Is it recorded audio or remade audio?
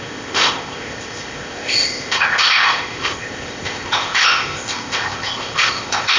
remade